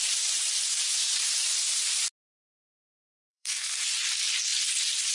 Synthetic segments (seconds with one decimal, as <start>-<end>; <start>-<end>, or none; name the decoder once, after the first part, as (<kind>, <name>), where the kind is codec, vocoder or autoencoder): 2.4-3.8 (codec, SNAC)